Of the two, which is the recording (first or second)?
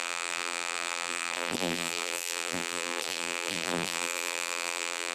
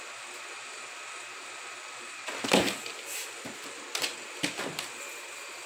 second